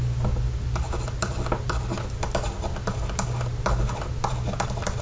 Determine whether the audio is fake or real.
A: real